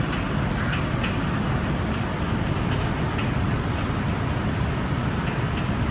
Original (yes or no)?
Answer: yes